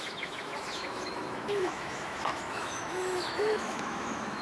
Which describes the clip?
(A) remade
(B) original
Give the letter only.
A